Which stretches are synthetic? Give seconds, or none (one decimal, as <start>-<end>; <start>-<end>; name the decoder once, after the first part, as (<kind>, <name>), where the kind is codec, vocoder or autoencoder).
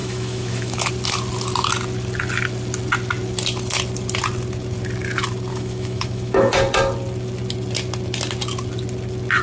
0.0-0.9 (autoencoder, DAC-VAE); 5.5-6.5